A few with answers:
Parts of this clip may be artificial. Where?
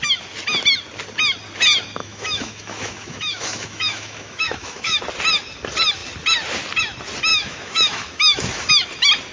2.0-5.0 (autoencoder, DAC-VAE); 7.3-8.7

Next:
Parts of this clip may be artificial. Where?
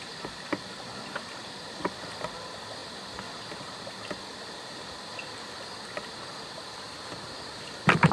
none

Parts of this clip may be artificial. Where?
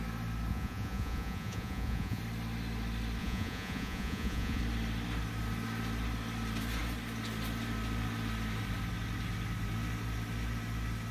0.5-2.2 (vocoder, Vocos); 3.2-4.6